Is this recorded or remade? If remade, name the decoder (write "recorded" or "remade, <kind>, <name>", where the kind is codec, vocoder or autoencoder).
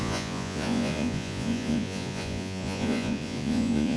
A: remade, vocoder, Vocos